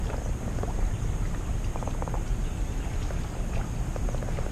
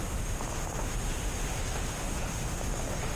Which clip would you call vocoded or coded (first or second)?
second